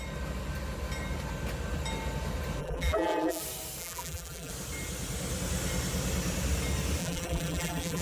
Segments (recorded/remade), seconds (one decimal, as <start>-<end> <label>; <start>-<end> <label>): 0.0-2.6 recorded; 2.6-3.4 remade; 3.4-3.8 recorded; 3.8-4.5 remade; 4.5-7.0 recorded; 7.0-8.0 remade